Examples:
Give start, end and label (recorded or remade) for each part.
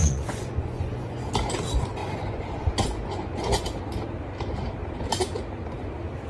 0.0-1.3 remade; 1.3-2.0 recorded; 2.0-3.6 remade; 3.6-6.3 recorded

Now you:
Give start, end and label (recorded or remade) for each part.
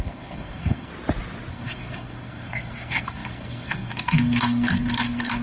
0.0-0.9 remade; 0.9-1.5 recorded; 1.5-5.4 remade